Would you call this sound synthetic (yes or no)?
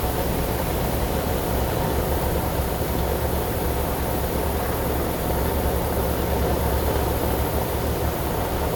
yes